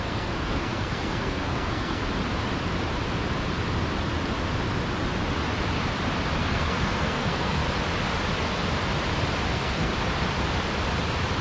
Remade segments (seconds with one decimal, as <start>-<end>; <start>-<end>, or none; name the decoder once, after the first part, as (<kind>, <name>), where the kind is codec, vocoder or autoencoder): 0.0-2.0 (codec, SNAC); 6.4-7.6; 9.5-9.9